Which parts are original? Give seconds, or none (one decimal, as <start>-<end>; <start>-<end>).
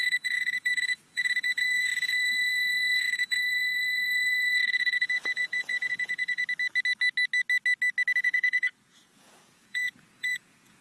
6.4-8.2